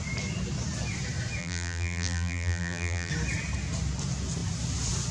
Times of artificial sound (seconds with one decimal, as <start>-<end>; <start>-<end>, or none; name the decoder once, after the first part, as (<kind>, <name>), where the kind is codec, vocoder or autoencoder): 1.4-3.1 (vocoder, BigVGAN v2)